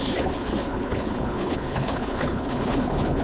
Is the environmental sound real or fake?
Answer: fake